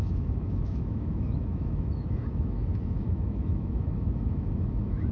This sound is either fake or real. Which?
fake